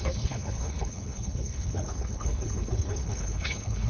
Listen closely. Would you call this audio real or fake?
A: fake